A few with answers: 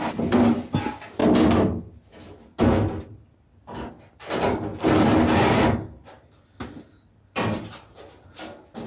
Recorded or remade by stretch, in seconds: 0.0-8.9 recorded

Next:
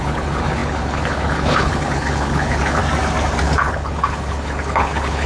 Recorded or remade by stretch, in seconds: 0.0-2.8 remade; 2.8-3.4 recorded; 3.4-5.3 remade

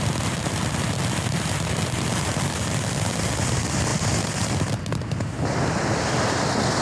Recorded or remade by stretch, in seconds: 0.0-6.8 recorded

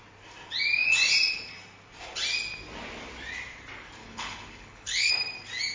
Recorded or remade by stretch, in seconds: 0.0-4.0 recorded; 4.0-5.1 remade; 5.1-5.7 recorded

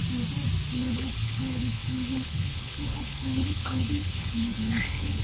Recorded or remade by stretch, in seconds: 0.0-0.7 recorded; 0.7-5.2 remade